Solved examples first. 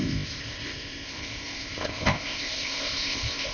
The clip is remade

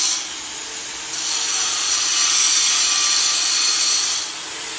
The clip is recorded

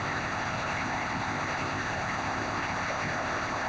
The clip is remade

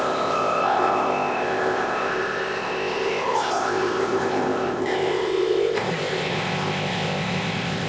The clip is remade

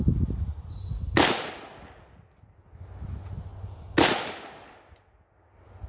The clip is recorded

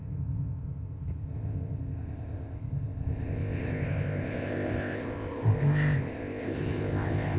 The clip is remade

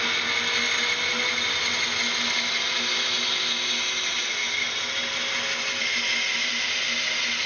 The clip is recorded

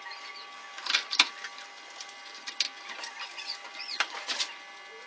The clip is recorded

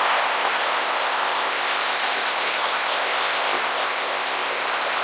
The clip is remade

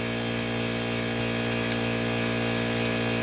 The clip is recorded